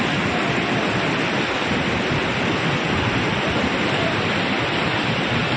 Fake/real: real